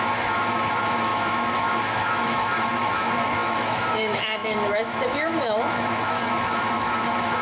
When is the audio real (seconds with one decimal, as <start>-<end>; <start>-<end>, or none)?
none